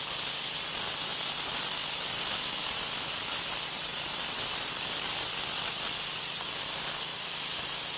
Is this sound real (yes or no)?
yes